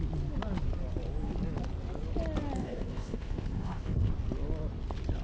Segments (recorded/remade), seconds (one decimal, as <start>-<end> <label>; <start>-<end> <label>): 0.0-2.6 recorded; 2.6-4.1 remade; 4.1-5.2 recorded